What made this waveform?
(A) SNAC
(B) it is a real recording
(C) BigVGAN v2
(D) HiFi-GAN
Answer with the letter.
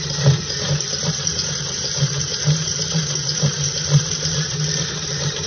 C